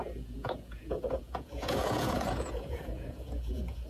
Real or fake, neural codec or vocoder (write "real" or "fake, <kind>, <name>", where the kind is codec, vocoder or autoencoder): fake, vocoder, Vocos